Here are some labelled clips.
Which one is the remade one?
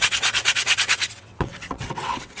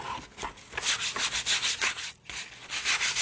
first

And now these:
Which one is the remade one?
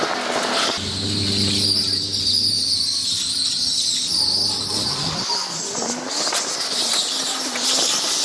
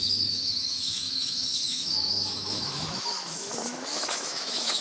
second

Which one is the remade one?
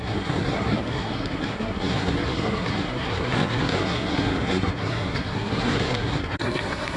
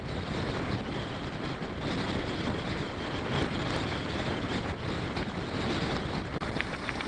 first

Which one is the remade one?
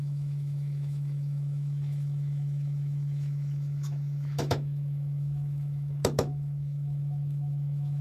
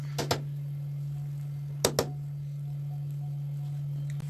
first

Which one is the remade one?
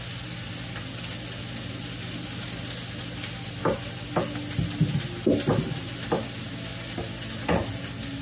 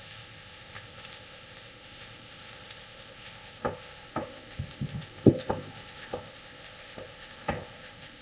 second